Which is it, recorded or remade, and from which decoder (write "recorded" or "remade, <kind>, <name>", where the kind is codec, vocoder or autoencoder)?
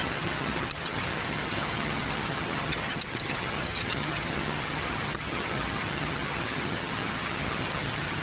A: remade, vocoder, HiFi-GAN